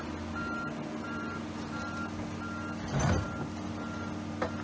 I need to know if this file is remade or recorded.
recorded